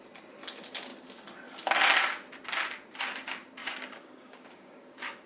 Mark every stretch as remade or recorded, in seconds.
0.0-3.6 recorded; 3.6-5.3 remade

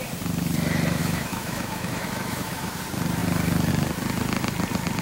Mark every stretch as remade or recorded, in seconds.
0.0-1.0 recorded; 1.0-2.8 remade; 2.8-5.0 recorded

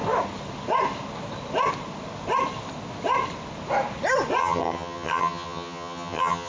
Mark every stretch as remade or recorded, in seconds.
0.0-4.4 recorded; 4.4-6.5 remade

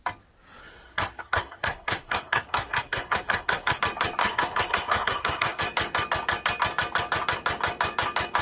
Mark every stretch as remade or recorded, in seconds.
0.0-0.6 recorded; 0.6-3.8 remade; 3.8-4.2 recorded; 4.2-5.6 remade; 5.6-8.4 recorded